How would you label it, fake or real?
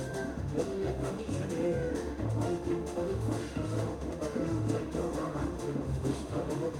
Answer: fake